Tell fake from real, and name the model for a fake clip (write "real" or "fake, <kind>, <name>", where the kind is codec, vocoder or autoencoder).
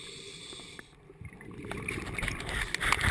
real